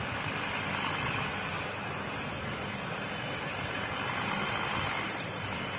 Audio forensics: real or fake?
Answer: real